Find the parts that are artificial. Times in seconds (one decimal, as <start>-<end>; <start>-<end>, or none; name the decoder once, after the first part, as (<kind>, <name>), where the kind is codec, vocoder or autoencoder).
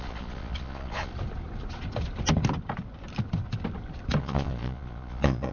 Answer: 0.0-1.1 (vocoder, Vocos); 4.2-5.5